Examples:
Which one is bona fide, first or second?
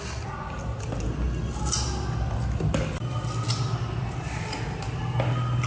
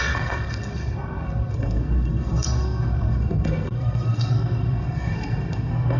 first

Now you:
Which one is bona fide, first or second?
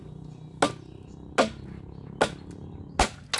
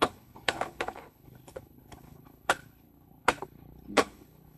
first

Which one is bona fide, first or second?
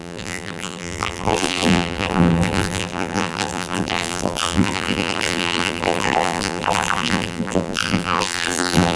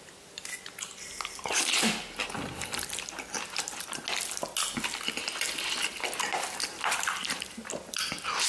second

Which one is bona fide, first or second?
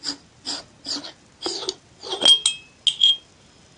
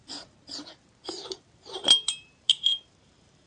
first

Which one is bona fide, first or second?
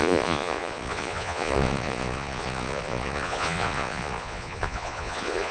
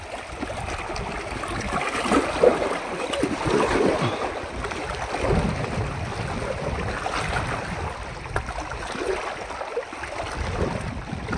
second